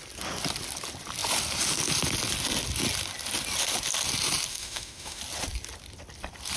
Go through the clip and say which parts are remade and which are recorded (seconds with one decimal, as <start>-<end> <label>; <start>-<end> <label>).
0.0-4.5 recorded; 4.5-5.2 remade; 5.2-6.6 recorded